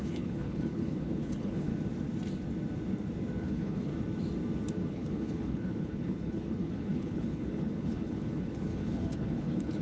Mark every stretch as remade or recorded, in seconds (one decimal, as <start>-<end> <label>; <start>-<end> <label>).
0.0-1.7 remade; 1.7-3.4 recorded; 3.4-3.9 remade; 3.9-4.9 recorded; 4.9-9.8 remade